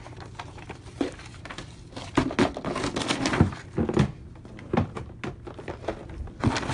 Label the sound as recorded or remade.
recorded